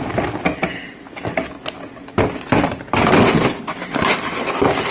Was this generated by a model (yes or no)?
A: no